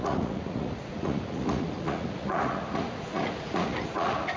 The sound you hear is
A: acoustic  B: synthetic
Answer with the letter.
B